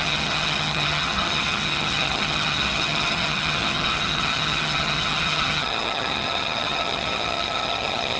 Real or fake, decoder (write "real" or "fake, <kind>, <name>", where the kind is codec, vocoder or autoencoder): fake, vocoder, HiFi-GAN